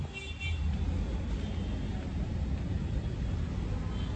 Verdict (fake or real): real